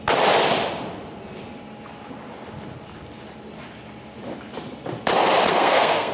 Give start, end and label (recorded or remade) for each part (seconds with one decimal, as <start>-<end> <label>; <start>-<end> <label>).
0.0-5.5 recorded; 5.5-6.1 remade